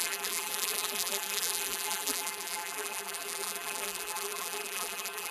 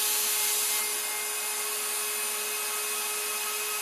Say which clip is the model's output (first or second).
first